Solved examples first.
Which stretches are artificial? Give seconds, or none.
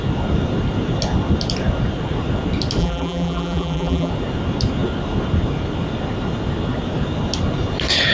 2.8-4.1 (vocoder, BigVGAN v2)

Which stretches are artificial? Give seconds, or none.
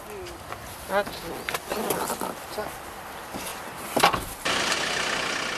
3.5-4.6 (vocoder, BigVGAN v2)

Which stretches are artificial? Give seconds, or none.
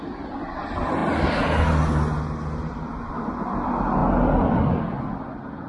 none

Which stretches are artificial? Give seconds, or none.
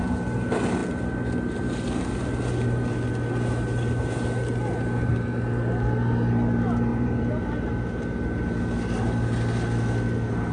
6.9-7.4 (vocoder, BigVGAN v2)